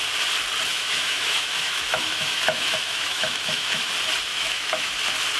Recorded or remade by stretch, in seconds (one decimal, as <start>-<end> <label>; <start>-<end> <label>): 0.0-0.7 recorded; 0.7-3.9 remade; 3.9-4.3 recorded; 4.3-4.9 remade; 4.9-5.4 recorded